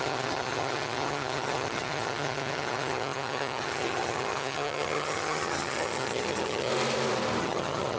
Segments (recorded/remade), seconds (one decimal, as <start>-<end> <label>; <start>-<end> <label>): 0.0-6.7 remade; 6.7-7.4 recorded; 7.4-8.0 remade